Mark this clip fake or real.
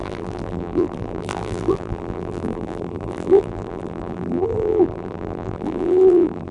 fake